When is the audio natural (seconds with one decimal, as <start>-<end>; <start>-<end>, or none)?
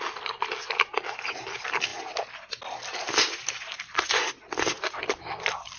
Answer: 0.0-1.9